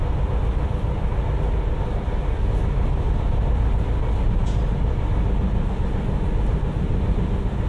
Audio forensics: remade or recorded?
recorded